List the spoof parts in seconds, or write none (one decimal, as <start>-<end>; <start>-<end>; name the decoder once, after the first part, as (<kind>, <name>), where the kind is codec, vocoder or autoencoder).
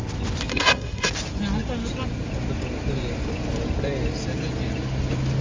0.5-1.1 (codec, SNAC)